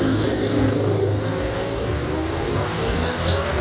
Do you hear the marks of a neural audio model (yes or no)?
yes